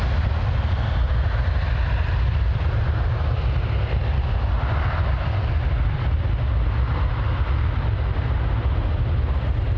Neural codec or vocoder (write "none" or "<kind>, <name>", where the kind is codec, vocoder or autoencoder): none